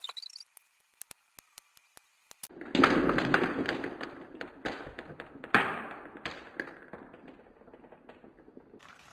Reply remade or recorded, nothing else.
recorded